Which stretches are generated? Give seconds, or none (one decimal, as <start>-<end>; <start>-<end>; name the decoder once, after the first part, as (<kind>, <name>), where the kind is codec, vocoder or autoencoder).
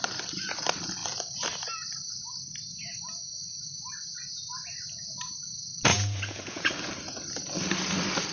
5.9-6.7 (vocoder, Vocos)